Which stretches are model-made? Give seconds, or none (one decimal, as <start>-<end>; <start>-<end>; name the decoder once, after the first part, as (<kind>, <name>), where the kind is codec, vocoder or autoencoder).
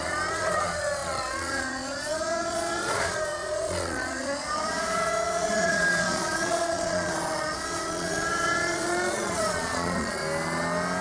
0.0-10.2 (vocoder, Vocos)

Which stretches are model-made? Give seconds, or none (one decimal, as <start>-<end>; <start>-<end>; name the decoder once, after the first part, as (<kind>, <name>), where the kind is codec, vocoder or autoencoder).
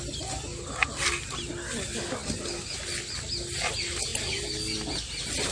none